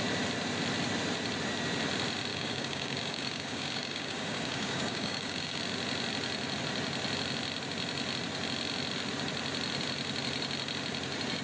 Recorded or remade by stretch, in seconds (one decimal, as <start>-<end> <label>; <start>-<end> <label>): 0.0-2.3 recorded; 2.3-5.6 remade; 5.6-11.4 recorded